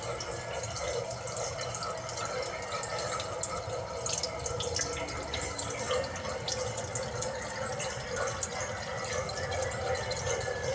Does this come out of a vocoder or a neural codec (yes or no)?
no